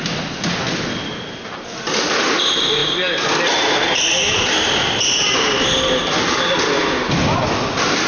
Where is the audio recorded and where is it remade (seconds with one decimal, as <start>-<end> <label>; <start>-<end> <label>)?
0.0-8.1 recorded

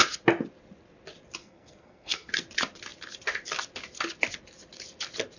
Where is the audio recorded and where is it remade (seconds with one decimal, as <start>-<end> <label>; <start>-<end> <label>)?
0.0-1.4 recorded; 1.4-2.3 remade; 2.3-5.4 recorded

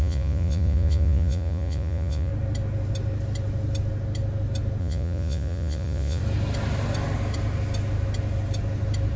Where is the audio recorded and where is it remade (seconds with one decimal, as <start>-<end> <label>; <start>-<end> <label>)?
0.0-2.3 remade; 2.3-4.8 recorded; 4.8-6.2 remade; 6.2-9.2 recorded